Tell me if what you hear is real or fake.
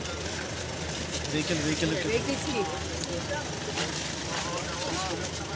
real